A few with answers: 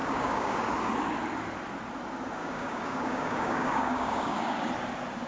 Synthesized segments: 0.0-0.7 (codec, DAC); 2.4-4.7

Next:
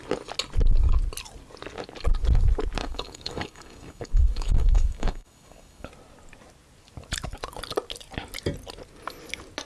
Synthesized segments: 2.8-5.9 (codec, DAC)

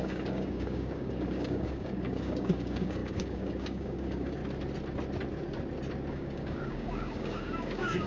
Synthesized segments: 0.0-4.4 (codec, DAC); 6.1-8.1

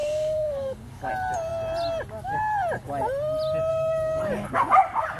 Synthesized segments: 0.0-1.1 (codec, DAC); 3.7-4.2

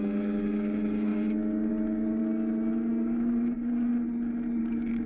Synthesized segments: 0.0-2.2 (codec, DAC); 2.9-3.9; 4.6-5.1

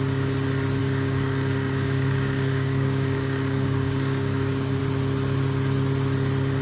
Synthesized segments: 0.8-4.8 (codec, DAC)

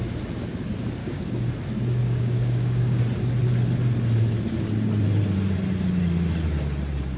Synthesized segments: 1.0-1.5 (codec, DAC); 2.0-3.0